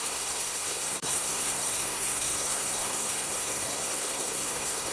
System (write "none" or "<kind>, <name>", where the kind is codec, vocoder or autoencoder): codec, SNAC